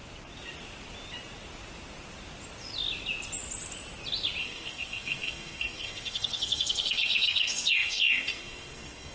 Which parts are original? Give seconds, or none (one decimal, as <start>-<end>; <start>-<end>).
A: 0.0-4.4